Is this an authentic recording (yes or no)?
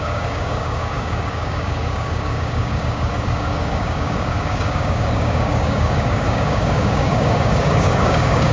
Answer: no